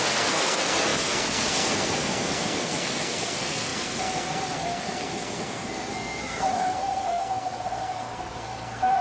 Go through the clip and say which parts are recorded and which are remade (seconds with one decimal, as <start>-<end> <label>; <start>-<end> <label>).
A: 0.0-9.0 remade